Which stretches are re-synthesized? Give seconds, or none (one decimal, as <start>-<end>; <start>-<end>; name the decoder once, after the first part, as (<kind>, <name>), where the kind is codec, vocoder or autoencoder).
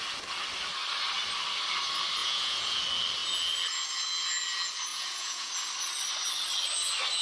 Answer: 2.2-2.8 (vocoder, Vocos); 4.9-5.5